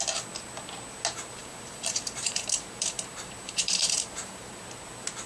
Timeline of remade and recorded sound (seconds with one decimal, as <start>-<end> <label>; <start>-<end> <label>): 0.0-1.4 recorded; 1.4-4.6 remade; 4.6-5.3 recorded